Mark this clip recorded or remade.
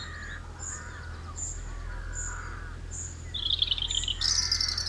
recorded